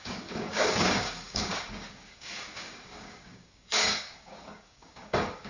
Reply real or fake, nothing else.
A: fake